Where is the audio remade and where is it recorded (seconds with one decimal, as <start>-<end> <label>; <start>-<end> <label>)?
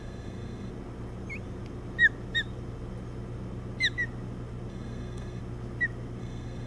0.0-0.7 remade; 0.7-4.7 recorded; 4.7-5.4 remade; 5.4-6.2 recorded; 6.2-6.7 remade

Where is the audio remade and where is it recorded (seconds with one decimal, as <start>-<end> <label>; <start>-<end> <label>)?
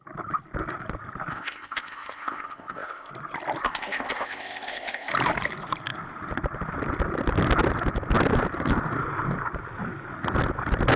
0.0-1.3 recorded; 1.3-3.1 remade; 3.1-3.6 recorded; 3.6-5.1 remade; 5.1-11.0 recorded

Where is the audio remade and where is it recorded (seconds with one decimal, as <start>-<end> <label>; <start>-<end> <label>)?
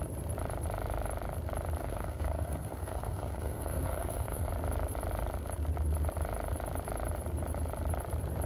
0.0-1.8 recorded; 1.8-4.5 remade; 4.5-8.5 recorded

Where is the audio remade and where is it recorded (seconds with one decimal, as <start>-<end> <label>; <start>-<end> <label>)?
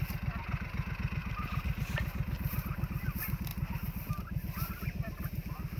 0.0-1.2 recorded; 1.2-1.8 remade; 1.8-5.8 recorded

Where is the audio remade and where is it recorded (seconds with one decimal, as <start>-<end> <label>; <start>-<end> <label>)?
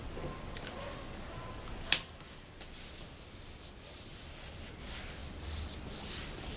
0.0-5.2 recorded; 5.2-6.6 remade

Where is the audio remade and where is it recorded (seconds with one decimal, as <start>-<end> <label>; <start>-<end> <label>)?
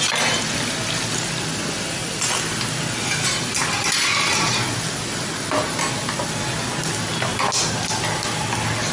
0.0-8.9 recorded